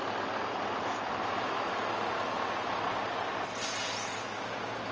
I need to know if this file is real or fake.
real